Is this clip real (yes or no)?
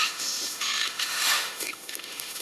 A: no